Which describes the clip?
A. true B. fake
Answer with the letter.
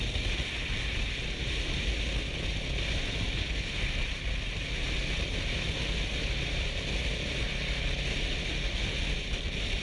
A